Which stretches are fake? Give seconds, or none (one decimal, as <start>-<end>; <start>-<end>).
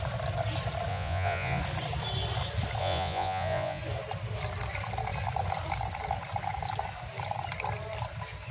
0.9-1.6; 2.8-3.8